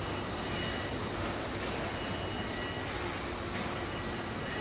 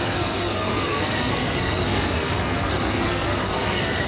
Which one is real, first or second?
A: first